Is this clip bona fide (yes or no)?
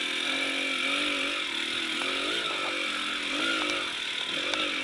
yes